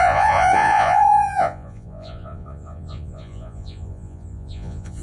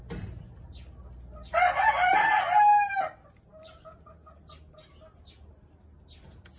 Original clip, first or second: second